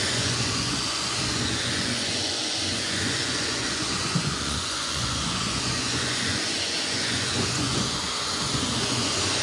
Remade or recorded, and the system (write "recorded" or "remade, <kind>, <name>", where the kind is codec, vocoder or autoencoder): remade, vocoder, Vocos